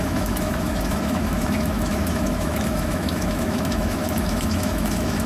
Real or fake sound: fake